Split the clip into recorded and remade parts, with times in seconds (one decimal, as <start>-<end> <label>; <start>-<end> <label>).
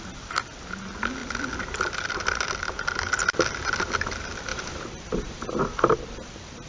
0.0-6.7 recorded